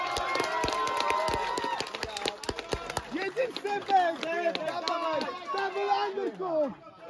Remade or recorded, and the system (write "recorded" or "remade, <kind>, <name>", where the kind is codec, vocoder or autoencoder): recorded